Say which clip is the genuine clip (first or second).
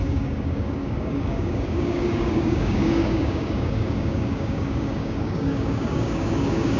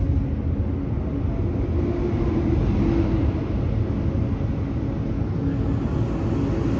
second